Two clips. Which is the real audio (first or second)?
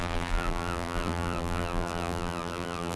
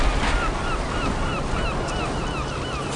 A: second